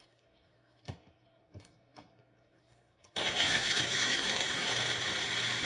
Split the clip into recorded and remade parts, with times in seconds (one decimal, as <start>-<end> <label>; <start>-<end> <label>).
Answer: 0.0-4.7 remade; 4.7-5.7 recorded